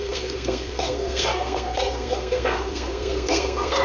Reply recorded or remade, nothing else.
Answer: remade